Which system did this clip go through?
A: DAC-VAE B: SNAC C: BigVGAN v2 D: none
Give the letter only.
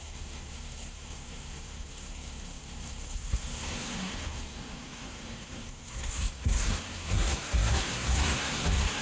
B